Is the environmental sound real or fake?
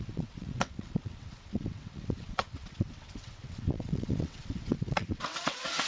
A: fake